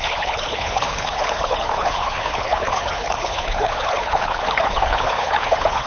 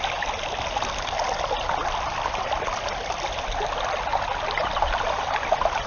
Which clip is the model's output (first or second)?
first